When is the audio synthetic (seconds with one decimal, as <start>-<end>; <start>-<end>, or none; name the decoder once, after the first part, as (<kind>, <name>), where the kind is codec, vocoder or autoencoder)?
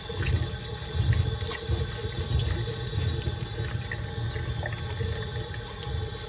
none